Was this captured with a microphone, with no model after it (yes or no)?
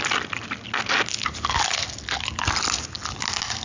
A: yes